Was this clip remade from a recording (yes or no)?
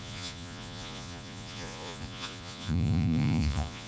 yes